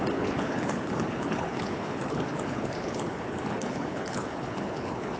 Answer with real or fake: fake